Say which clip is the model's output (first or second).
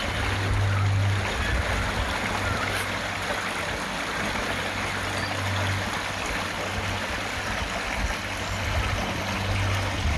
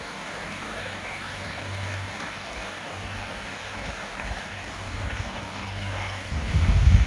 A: second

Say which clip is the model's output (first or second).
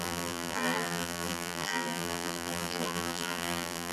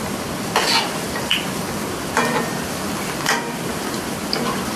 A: first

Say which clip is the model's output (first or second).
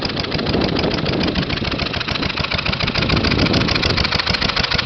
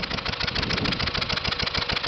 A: first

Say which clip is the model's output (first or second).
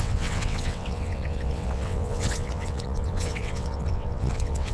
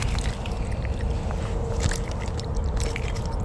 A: first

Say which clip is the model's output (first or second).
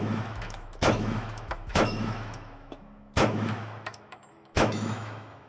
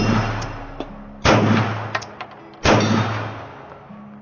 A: first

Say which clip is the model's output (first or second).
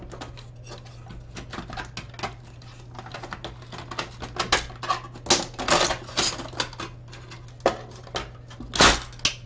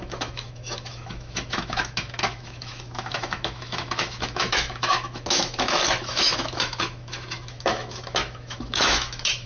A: second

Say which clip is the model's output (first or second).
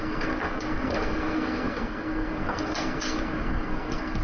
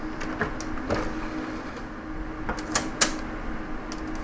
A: first